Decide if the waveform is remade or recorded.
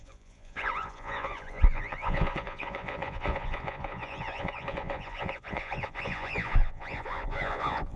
remade